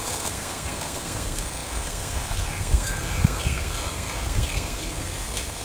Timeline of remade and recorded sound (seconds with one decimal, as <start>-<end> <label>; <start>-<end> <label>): 0.0-5.6 remade